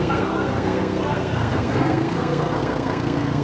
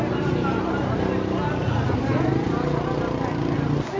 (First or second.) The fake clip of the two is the first